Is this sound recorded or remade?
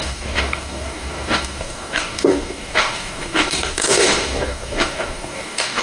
remade